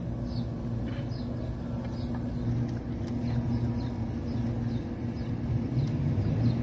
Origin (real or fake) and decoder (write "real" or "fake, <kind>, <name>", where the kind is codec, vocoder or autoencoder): real